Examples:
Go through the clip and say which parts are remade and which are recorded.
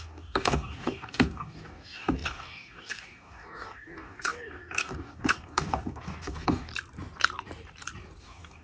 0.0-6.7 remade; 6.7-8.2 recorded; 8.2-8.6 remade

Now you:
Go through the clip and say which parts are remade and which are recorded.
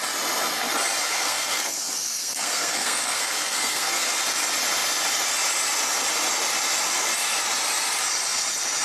0.0-1.0 recorded; 1.0-4.2 remade; 4.2-8.8 recorded